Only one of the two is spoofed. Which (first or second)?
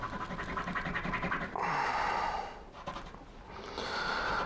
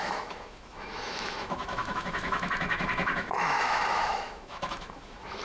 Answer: second